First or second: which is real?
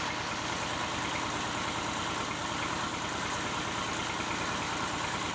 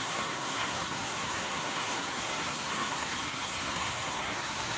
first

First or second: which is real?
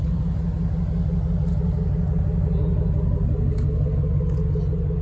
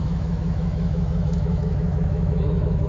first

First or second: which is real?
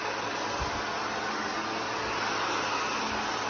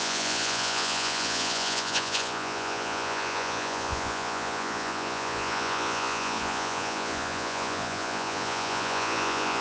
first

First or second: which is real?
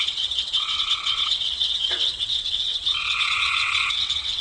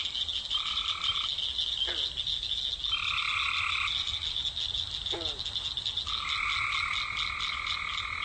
second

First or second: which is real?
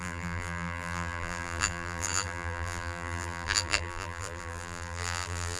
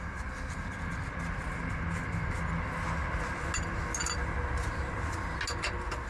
second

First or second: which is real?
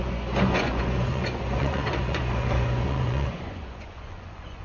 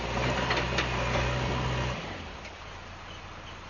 second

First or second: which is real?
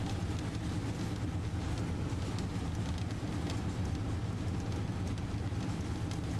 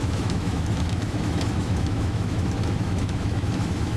first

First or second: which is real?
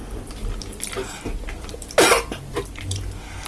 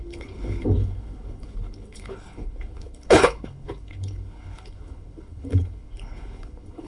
first